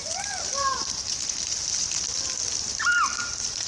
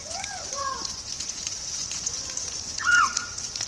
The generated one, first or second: second